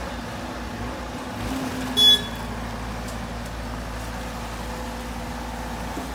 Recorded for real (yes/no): yes